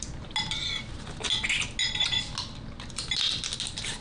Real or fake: real